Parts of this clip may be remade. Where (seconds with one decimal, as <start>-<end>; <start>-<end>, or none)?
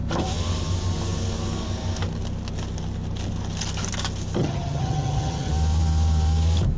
4.4-5.5